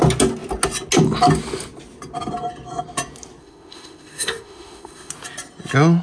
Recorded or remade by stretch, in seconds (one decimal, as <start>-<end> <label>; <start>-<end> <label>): 0.0-3.4 recorded; 3.4-5.1 remade; 5.1-6.0 recorded